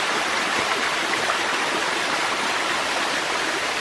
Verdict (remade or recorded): recorded